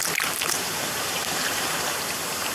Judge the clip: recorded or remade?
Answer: remade